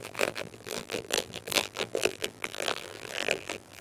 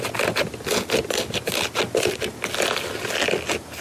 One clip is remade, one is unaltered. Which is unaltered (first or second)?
second